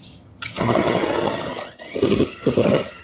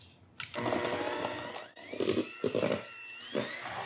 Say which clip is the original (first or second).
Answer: second